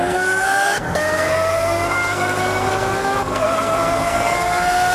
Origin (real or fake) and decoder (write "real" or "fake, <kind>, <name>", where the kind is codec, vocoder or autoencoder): fake, codec, SNAC